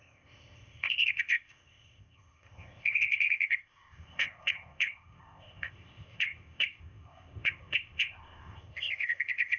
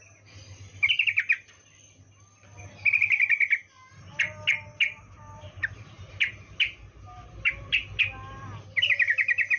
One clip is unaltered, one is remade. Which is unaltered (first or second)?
second